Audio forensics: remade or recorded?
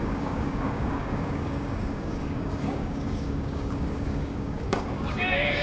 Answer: remade